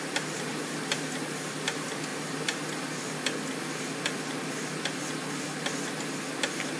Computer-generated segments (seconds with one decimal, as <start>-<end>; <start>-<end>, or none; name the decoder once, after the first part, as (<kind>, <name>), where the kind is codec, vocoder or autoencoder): none